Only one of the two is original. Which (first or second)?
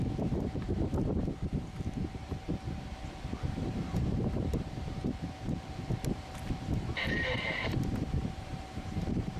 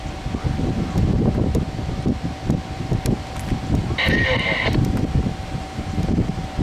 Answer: second